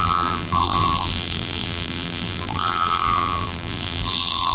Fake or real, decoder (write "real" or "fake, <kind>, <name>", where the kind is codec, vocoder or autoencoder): fake, vocoder, BigVGAN v2